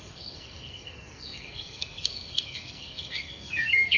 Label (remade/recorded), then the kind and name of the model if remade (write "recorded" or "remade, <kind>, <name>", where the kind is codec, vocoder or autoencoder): remade, codec, SNAC